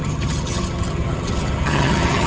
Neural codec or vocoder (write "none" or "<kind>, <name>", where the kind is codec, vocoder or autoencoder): vocoder, HiFi-GAN